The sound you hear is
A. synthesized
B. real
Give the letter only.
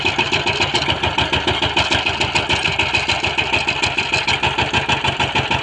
B